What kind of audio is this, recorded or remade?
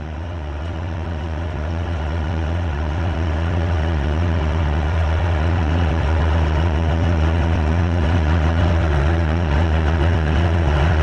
remade